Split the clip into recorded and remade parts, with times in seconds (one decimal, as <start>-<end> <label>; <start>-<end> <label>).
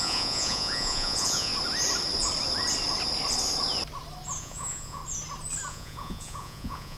0.0-1.5 remade; 1.5-4.4 recorded; 4.4-5.0 remade; 5.0-5.7 recorded; 5.7-7.0 remade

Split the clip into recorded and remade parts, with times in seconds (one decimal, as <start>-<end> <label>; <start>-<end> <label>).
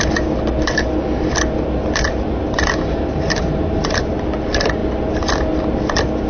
0.0-3.1 recorded; 3.1-4.0 remade; 4.0-6.3 recorded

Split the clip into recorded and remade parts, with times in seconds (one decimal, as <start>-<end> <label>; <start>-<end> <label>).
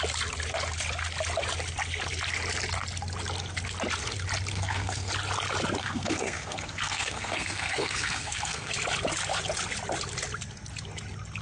0.0-4.5 recorded; 4.5-5.1 remade; 5.1-5.8 recorded; 5.8-8.7 remade; 8.7-11.4 recorded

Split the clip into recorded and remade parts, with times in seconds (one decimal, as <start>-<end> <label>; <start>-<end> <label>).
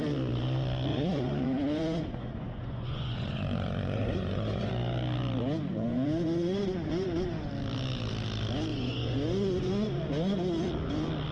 0.0-0.9 recorded; 0.9-4.7 remade; 4.7-5.7 recorded; 5.7-7.5 remade; 7.5-8.7 recorded; 8.7-10.0 remade; 10.0-11.3 recorded